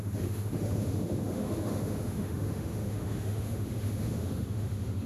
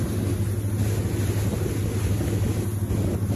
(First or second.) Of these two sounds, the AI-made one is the first